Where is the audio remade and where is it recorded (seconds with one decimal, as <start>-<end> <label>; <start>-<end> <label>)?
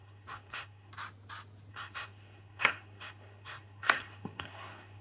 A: 0.0-0.9 remade; 0.9-1.7 recorded; 1.7-5.0 remade